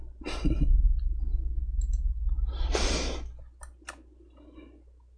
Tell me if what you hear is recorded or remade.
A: recorded